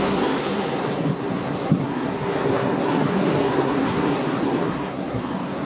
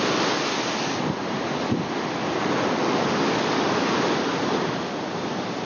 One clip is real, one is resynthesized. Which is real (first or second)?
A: second